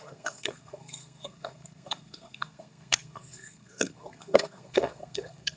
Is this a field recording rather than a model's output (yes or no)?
no